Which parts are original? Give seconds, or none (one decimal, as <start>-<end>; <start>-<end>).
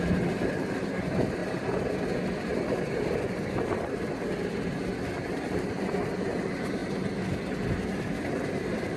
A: 0.0-9.0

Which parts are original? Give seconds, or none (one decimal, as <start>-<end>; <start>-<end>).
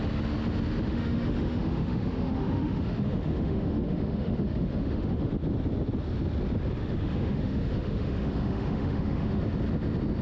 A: 0.0-0.9; 5.3-6.8; 9.4-10.2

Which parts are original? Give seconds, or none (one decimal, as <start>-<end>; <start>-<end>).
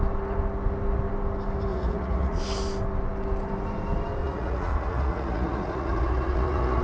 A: 0.0-1.7; 2.4-4.2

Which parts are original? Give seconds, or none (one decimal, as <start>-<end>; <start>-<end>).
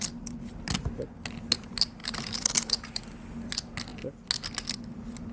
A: 0.0-2.0; 3.0-5.3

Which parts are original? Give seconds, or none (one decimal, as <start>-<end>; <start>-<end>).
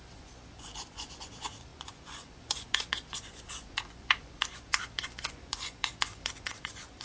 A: none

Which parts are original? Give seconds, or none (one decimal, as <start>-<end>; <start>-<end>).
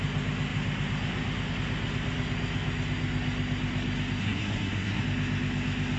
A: 0.0-4.2; 5.0-6.0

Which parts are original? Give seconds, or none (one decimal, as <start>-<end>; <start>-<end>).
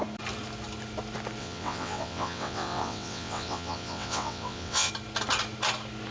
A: 0.0-1.4; 4.9-6.1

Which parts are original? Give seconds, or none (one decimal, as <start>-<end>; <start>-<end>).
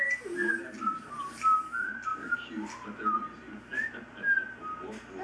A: 0.0-5.2